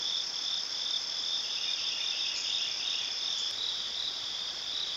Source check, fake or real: fake